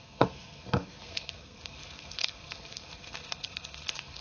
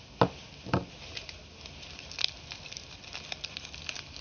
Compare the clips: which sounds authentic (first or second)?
second